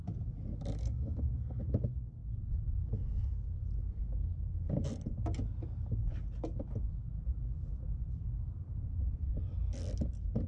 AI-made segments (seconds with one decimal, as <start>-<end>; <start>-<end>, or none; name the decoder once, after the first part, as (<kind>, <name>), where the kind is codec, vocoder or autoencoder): 0.8-1.6 (codec, SNAC)